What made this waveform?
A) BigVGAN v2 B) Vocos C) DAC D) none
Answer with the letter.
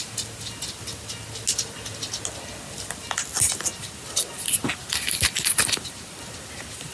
D